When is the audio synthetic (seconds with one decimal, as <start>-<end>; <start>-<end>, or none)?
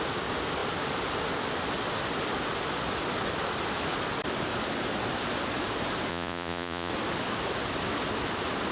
6.1-6.9